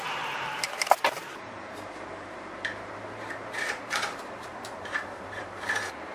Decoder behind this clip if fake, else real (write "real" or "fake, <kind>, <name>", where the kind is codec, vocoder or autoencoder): fake, vocoder, BigVGAN v2